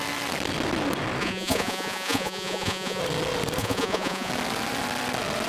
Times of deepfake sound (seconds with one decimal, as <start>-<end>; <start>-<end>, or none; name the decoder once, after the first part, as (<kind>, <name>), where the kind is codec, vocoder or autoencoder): 1.2-3.0 (vocoder, Vocos); 3.6-4.3